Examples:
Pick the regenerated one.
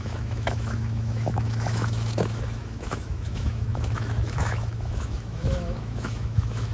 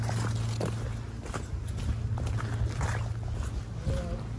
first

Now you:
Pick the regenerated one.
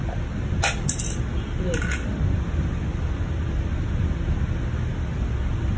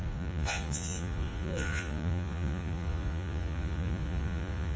second